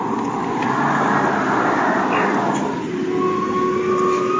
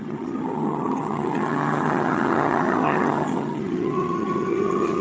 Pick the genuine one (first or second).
first